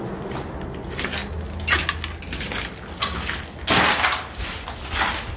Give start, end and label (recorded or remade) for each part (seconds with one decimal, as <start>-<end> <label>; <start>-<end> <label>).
0.0-5.4 recorded